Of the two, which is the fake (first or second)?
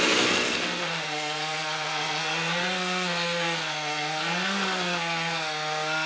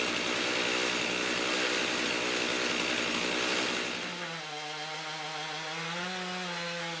first